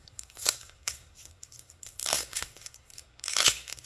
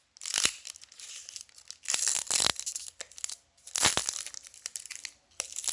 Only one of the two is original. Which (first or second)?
second